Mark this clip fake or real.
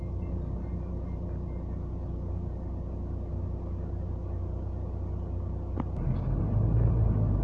real